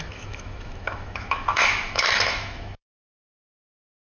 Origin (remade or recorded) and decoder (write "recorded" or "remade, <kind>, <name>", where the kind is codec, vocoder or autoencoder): remade, autoencoder, DAC-VAE